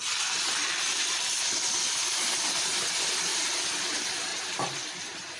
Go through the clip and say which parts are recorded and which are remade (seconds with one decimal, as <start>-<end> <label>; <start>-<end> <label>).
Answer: 0.0-5.4 recorded